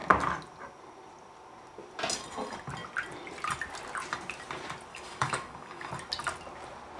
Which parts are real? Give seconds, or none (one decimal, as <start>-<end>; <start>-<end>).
0.0-4.9; 5.9-7.0